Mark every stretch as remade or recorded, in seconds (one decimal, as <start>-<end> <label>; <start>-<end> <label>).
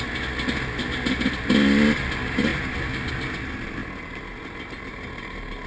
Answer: 0.0-5.7 recorded